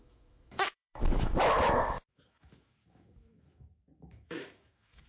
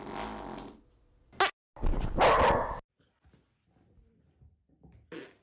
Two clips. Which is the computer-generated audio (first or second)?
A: first